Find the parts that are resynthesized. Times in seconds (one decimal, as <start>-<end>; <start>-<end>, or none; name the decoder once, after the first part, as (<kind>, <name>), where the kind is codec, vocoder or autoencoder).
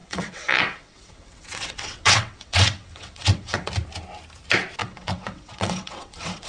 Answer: 0.0-3.7 (vocoder, WaveNeXt); 4.8-6.5